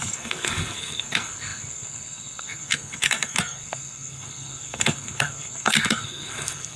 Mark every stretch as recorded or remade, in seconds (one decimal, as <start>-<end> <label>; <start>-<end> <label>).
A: 0.0-6.8 remade